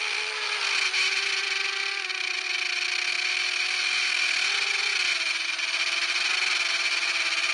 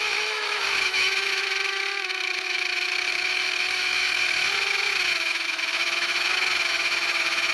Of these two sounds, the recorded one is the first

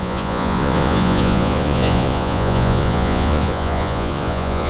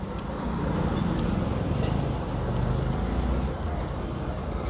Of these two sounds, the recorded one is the second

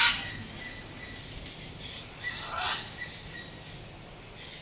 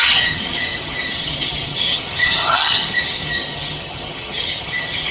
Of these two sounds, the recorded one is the first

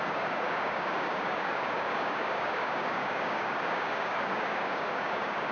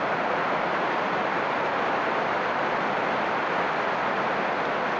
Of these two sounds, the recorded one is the second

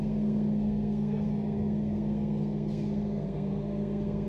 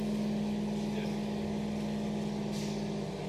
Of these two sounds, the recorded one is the second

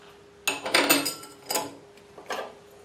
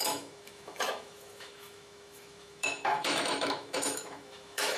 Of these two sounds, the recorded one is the first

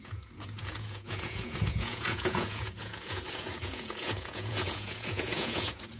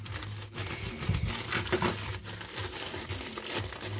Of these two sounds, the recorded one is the second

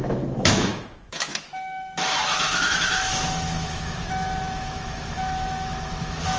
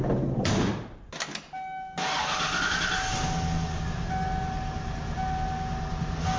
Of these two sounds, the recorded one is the second